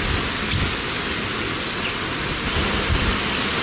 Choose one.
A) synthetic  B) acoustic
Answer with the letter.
B